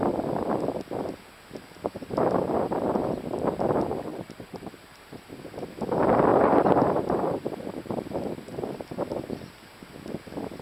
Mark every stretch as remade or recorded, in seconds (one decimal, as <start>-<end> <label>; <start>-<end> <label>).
0.0-4.1 recorded; 4.1-5.7 remade; 5.7-6.3 recorded; 6.3-7.9 remade; 7.9-8.5 recorded; 8.5-9.0 remade; 9.0-10.6 recorded